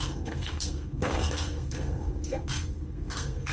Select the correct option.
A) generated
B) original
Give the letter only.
A